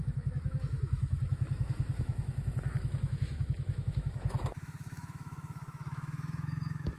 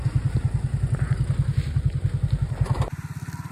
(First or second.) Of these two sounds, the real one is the second